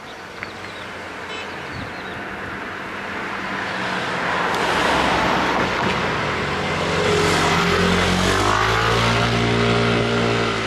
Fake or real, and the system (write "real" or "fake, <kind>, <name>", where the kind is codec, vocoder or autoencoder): real